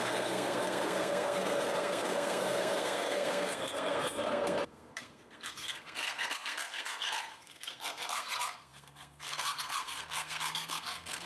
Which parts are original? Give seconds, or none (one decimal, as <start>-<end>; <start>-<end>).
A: none